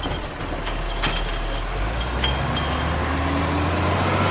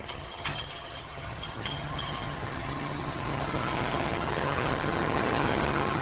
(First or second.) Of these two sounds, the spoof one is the second